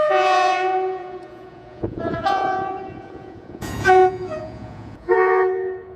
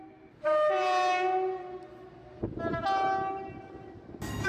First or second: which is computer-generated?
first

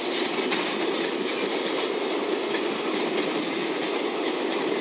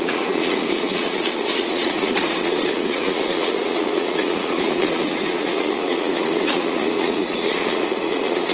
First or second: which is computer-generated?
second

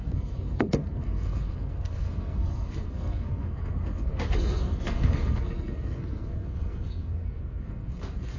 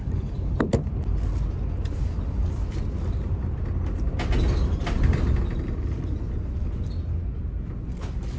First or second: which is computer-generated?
first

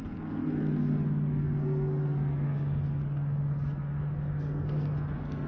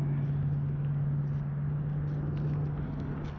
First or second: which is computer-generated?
first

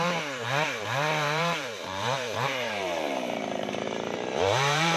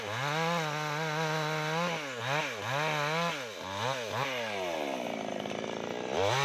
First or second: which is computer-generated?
first